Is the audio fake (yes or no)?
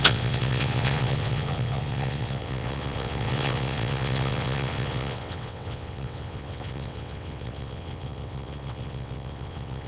yes